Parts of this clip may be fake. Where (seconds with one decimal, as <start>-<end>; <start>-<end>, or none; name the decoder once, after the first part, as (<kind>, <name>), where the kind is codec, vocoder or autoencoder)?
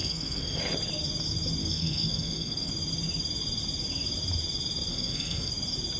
0.0-0.6 (codec, SNAC); 1.6-2.7; 4.9-5.5